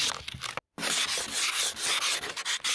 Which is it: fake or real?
real